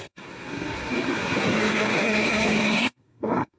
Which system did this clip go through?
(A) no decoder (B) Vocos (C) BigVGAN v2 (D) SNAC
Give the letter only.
D